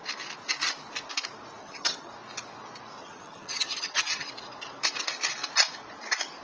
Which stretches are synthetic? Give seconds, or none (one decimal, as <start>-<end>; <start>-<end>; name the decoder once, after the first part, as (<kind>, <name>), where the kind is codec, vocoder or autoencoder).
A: 1.6-2.1 (vocoder, HiFi-GAN); 3.0-4.3

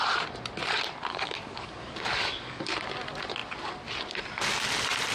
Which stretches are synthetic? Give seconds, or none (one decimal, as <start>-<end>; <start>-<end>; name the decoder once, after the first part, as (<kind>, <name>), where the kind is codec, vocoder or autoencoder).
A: 1.1-2.7 (codec, DAC)

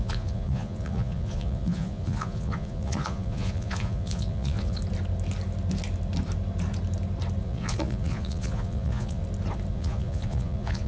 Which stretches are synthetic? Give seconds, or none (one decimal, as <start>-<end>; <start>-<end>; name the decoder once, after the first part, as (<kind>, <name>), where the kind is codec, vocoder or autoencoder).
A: 0.0-4.8 (vocoder, Vocos); 7.4-9.2; 9.7-10.9

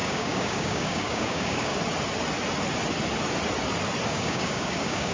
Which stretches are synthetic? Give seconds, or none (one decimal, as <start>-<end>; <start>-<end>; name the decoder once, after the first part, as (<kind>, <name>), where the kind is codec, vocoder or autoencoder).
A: 0.0-1.7 (codec, DAC); 4.1-5.1